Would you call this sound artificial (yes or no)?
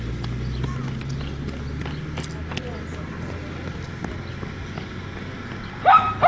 no